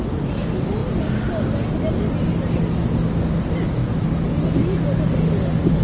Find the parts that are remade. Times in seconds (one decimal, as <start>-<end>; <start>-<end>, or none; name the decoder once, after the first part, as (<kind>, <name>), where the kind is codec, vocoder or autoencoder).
none